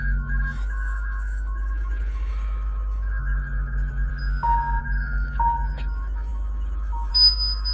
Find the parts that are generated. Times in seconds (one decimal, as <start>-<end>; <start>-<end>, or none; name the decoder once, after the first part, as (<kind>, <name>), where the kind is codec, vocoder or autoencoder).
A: 0.0-4.1 (autoencoder, DAC-VAE); 4.8-7.7